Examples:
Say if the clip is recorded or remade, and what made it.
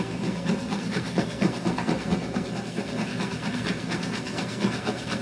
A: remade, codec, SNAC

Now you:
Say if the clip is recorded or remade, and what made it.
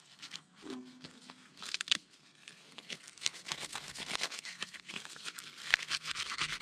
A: remade, codec, SNAC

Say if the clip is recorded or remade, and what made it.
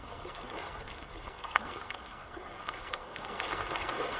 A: remade, codec, SNAC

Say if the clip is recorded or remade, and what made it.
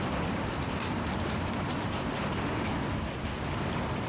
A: recorded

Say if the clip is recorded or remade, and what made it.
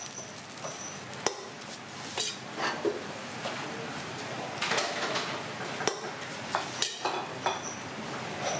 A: recorded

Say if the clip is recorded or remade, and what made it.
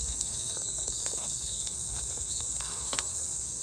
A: remade, codec, SNAC